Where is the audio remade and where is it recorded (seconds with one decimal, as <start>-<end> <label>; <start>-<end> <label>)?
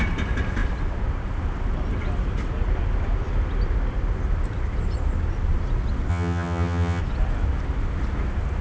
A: 0.0-6.1 recorded; 6.1-7.0 remade; 7.0-8.6 recorded